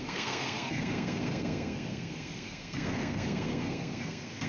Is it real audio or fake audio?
fake